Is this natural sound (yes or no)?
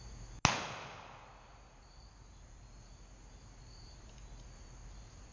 yes